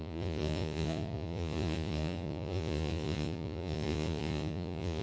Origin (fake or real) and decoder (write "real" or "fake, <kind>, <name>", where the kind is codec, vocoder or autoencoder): fake, vocoder, Vocos